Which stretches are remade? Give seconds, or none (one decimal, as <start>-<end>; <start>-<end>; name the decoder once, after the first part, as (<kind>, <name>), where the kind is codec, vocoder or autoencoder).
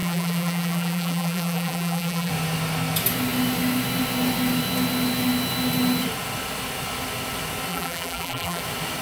0.0-2.3 (vocoder, BigVGAN v2); 7.7-8.6